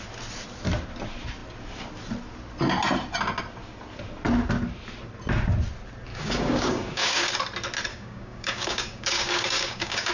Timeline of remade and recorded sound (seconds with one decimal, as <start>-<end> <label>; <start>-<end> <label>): 0.0-6.1 recorded; 6.1-7.3 remade; 7.3-7.9 recorded; 7.9-10.1 remade